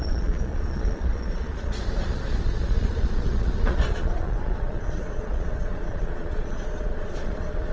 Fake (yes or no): yes